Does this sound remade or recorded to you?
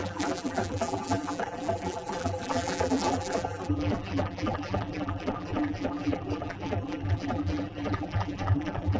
remade